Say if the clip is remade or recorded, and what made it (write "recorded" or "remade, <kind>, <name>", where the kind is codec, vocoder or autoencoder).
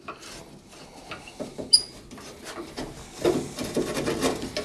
recorded